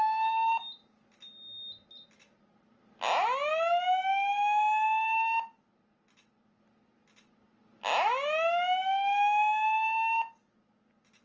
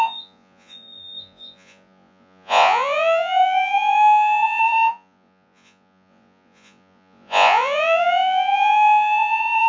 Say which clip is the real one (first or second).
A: first